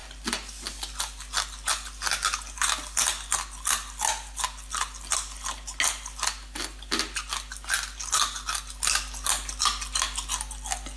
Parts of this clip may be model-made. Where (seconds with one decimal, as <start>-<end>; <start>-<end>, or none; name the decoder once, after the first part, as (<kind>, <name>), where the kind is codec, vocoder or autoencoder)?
none